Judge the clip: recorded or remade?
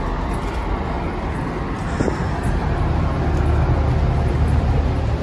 recorded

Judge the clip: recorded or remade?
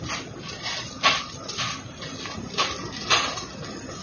recorded